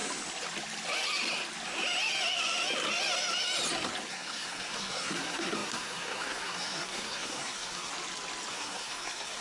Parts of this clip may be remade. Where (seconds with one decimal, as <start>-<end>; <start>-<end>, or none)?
4.1-7.9; 8.5-9.4